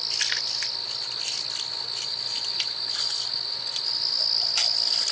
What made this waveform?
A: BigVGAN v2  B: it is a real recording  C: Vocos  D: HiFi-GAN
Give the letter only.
B